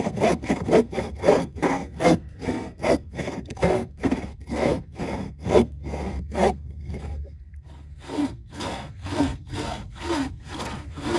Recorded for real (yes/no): no